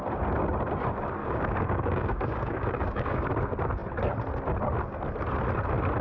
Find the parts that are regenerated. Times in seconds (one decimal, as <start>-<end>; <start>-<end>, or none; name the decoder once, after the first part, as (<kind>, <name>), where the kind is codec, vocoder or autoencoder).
1.2-3.3 (codec, DAC)